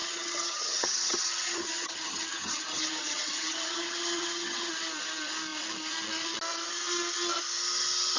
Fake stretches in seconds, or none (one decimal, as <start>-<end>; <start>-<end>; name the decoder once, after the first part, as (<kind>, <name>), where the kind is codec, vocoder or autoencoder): 0.0-4.7 (vocoder, HiFi-GAN)